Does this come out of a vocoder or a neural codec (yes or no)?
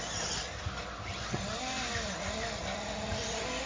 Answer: no